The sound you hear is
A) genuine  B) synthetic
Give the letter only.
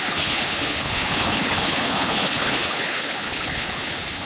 B